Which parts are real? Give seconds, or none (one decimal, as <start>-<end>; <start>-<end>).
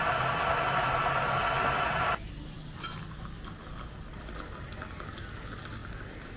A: 0.0-6.4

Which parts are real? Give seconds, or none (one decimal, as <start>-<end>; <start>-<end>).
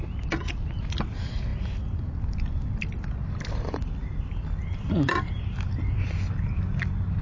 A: 0.0-7.2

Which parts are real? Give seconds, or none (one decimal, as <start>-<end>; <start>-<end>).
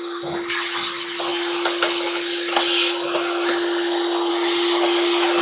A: 0.0-5.4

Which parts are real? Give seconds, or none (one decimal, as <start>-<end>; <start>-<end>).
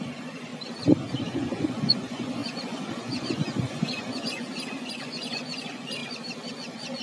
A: 0.5-1.2; 6.0-6.5